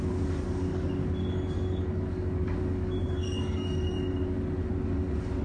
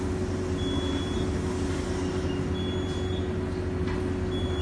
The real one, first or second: second